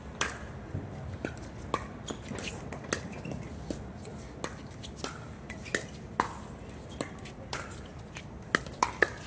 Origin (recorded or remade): recorded